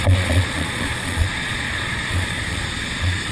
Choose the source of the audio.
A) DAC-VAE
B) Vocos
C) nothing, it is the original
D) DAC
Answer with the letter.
B